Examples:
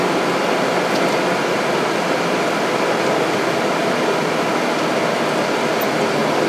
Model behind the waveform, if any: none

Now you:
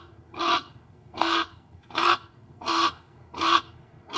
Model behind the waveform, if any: codec, SNAC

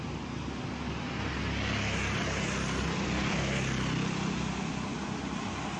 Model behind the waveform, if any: none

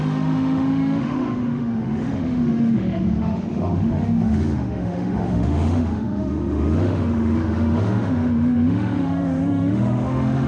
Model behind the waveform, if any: autoencoder, DAC-VAE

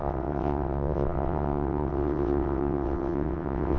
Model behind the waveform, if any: vocoder, WaveNeXt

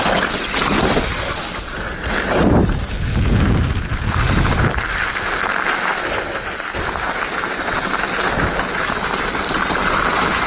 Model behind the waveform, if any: none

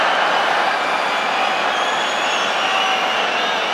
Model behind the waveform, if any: none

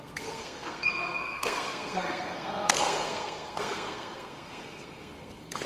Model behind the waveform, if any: codec, SNAC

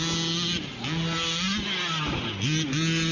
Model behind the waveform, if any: none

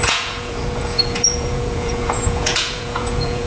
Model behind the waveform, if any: vocoder, Vocos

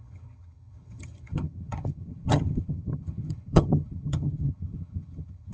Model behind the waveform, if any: vocoder, HiFi-GAN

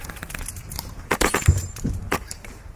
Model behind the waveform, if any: vocoder, BigVGAN v2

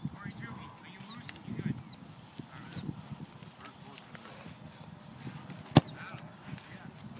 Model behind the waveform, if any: none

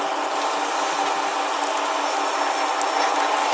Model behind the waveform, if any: none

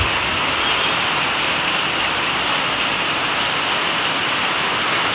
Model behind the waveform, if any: none